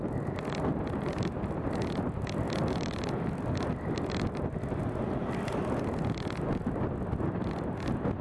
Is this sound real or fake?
real